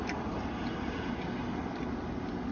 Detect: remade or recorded recorded